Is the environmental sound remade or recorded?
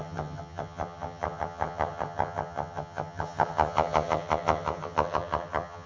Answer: remade